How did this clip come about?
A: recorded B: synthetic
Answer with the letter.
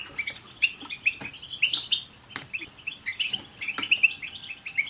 A